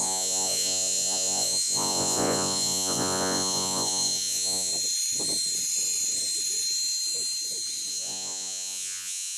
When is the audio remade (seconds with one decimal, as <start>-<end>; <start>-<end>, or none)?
0.0-4.7; 7.9-9.4